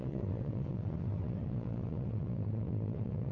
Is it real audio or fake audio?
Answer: fake